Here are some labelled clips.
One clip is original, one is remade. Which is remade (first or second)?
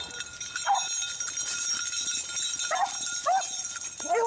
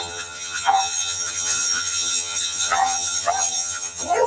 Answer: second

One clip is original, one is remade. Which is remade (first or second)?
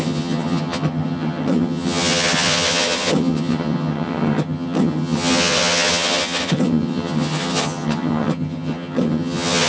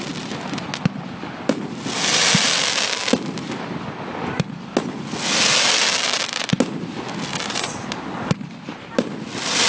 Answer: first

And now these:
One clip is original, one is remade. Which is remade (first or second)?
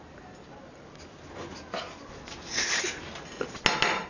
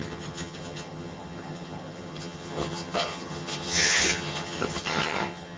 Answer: second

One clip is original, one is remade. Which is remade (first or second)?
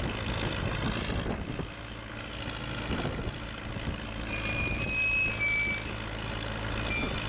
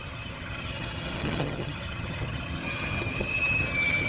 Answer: second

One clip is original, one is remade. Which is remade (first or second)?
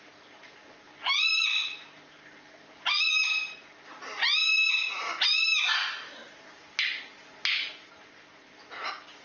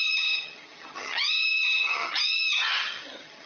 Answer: second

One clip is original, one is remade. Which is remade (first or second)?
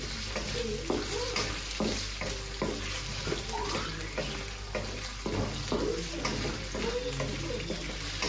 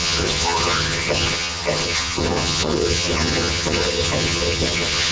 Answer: second